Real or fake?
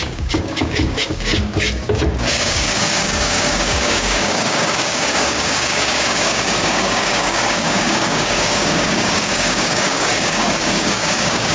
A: fake